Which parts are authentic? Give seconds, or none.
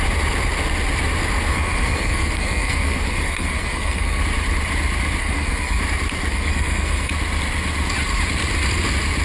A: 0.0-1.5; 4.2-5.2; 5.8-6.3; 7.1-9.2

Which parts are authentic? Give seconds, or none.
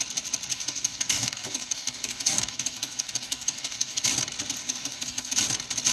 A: 0.0-0.5; 4.0-4.6; 5.3-5.9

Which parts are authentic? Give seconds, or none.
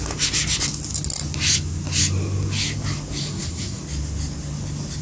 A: 0.0-3.2; 3.8-5.0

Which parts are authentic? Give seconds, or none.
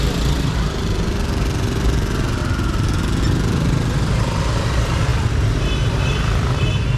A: 2.4-3.2; 5.1-6.1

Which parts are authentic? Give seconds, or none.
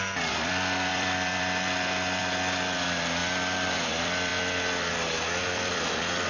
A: 3.2-3.7; 4.3-4.9